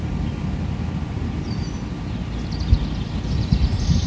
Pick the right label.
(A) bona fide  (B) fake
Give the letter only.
A